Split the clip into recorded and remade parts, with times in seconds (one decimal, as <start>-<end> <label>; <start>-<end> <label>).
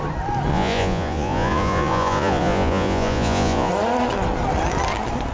0.0-0.5 recorded; 0.5-3.7 remade; 3.7-5.3 recorded